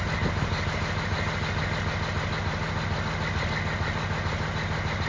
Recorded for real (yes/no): yes